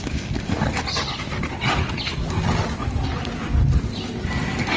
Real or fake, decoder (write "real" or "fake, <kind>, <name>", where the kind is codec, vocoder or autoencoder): real